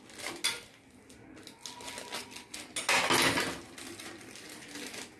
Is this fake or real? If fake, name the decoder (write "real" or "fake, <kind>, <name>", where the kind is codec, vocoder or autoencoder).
real